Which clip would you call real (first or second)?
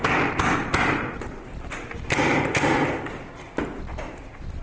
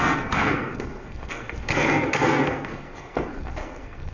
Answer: first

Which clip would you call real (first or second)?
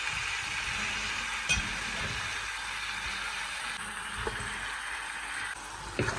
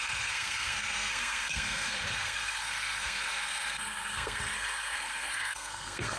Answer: first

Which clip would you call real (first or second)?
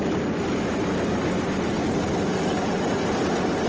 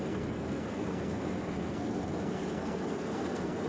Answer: first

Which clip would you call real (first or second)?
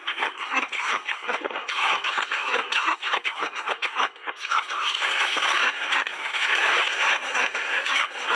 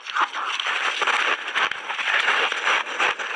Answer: second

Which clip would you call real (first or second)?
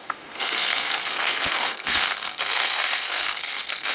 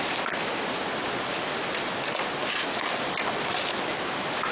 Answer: second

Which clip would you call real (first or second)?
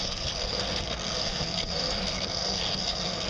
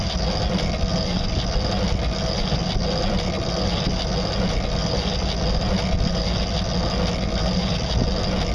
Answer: second